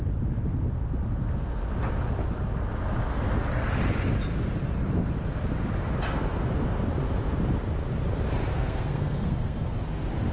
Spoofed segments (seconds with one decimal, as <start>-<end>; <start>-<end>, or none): 8.5-9.8